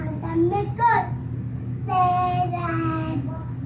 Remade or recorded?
recorded